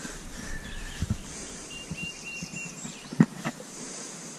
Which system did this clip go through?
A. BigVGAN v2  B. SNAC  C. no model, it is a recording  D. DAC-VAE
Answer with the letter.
A